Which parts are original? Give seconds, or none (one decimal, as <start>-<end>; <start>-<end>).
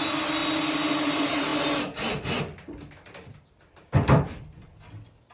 0.0-5.3